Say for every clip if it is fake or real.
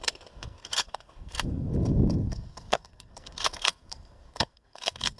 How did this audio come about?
fake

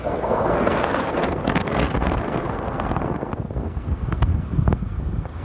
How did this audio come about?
fake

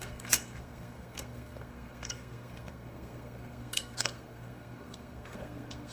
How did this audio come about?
fake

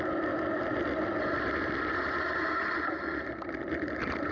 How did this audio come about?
real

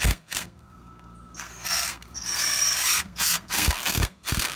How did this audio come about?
fake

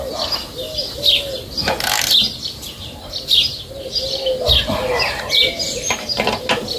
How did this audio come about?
real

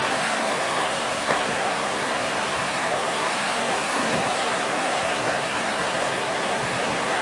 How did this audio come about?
fake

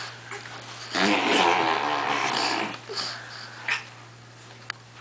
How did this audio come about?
real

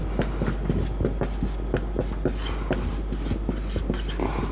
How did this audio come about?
real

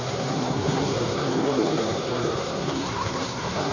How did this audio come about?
fake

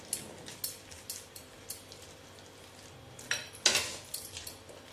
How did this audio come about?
real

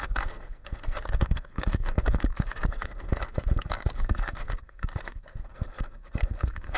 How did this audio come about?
fake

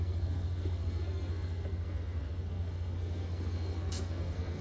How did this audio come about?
fake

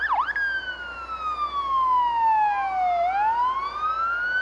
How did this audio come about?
real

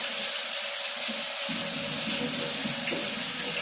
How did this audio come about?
real